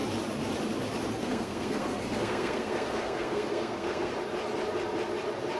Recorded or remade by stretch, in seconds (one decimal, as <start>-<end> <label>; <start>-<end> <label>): 0.0-1.2 recorded; 1.2-4.1 remade; 4.1-5.6 recorded